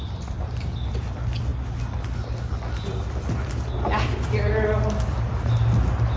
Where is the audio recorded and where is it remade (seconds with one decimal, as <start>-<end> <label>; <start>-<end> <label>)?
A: 0.0-6.2 recorded